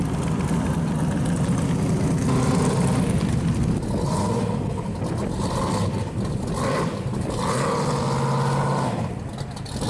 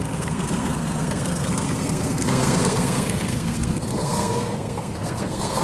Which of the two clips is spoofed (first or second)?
second